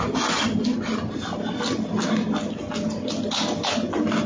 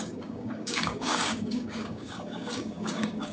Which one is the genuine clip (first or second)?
first